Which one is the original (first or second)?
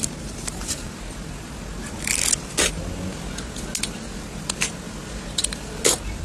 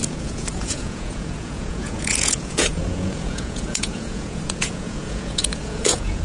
first